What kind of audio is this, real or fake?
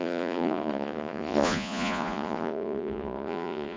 fake